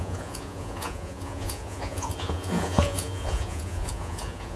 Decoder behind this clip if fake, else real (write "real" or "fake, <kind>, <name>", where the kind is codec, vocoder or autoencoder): fake, vocoder, Vocos